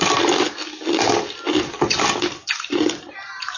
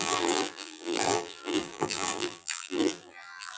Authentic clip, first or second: first